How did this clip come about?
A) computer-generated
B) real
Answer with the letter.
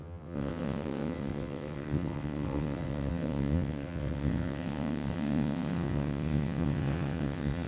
A